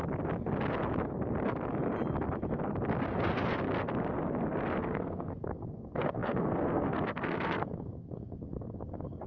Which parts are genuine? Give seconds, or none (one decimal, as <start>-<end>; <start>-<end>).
0.0-4.8